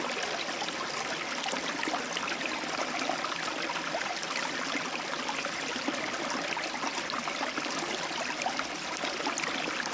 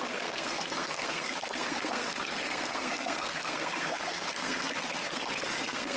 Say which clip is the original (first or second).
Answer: first